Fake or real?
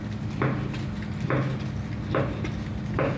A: real